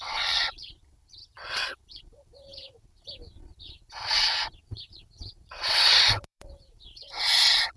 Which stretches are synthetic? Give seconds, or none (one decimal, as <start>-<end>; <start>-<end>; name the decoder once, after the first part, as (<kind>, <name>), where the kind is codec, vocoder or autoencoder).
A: 0.0-7.8 (vocoder, WaveNeXt)